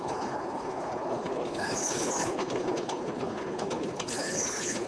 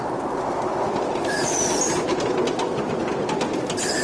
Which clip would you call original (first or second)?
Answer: second